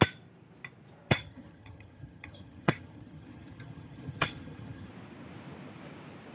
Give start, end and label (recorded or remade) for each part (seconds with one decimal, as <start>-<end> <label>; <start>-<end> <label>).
0.0-1.1 recorded; 1.1-4.9 remade; 4.9-6.3 recorded